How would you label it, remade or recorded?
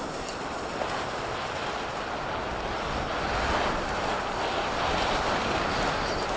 recorded